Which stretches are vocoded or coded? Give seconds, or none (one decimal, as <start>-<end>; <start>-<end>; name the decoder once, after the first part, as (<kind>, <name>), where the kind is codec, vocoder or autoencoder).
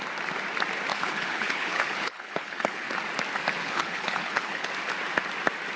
0.9-2.9 (codec, HILCodec); 3.6-4.7